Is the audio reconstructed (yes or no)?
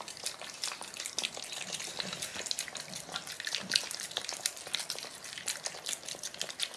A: no